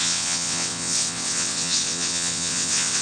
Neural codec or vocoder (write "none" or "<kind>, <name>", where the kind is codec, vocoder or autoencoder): vocoder, WaveNeXt